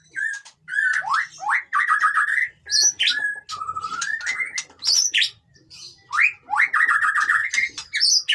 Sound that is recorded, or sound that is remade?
recorded